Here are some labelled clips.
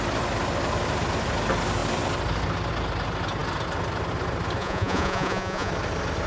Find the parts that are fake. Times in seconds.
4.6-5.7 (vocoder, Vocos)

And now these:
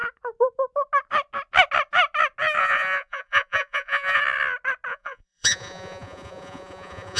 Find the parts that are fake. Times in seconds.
2.6-4.2 (vocoder, Vocos); 4.9-7.2